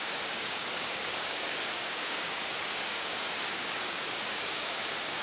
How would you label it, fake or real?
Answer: fake